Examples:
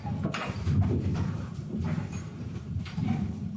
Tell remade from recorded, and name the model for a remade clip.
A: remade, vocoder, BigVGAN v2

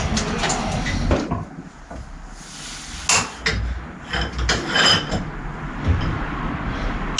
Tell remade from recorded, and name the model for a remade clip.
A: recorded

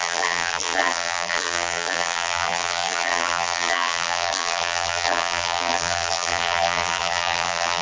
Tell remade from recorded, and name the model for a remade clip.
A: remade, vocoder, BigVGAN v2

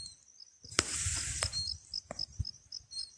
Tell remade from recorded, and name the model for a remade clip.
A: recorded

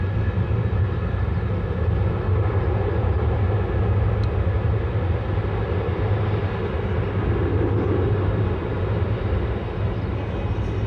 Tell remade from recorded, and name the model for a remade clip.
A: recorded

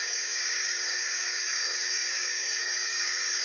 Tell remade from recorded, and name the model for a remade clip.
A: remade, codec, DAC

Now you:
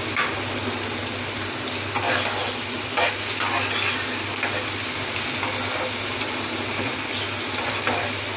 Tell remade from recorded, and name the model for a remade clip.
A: recorded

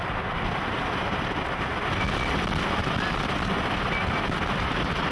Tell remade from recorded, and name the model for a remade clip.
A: recorded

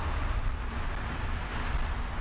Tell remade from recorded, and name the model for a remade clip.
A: recorded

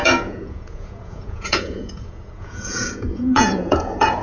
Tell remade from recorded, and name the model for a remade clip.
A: remade, vocoder, Vocos